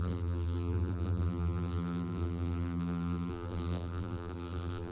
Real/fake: fake